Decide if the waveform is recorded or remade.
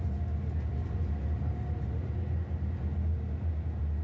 recorded